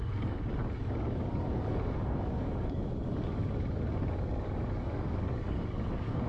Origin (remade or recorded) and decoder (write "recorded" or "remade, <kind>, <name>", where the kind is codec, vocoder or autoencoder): remade, codec, DAC